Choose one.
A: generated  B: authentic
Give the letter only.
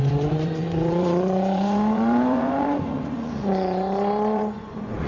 A